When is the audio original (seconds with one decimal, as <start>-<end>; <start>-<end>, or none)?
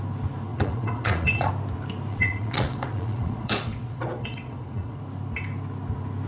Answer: 0.0-0.5; 1.5-2.1; 5.0-6.3